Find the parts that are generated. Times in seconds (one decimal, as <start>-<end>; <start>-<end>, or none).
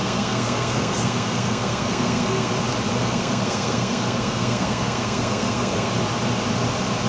0.0-2.5; 3.0-5.9